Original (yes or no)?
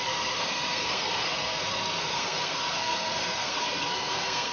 no